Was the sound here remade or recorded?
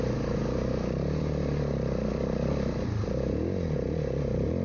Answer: recorded